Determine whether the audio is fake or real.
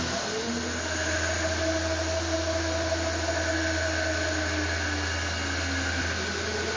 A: real